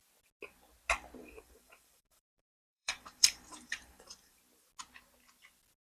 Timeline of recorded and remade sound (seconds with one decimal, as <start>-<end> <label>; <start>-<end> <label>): 0.0-1.2 recorded; 1.2-4.4 remade; 4.4-5.9 recorded